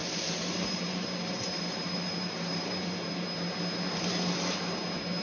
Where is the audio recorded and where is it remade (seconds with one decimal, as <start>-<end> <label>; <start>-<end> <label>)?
0.0-2.7 remade; 2.7-5.2 recorded